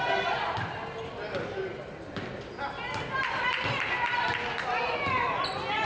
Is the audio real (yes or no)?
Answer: yes